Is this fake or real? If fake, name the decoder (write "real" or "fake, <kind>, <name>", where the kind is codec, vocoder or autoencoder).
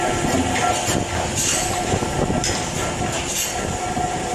real